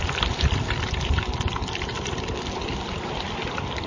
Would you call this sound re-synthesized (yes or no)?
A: no